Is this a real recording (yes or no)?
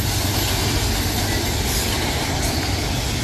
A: yes